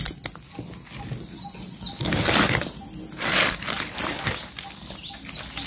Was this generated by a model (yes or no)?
no